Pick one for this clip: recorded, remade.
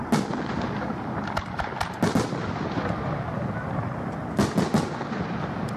recorded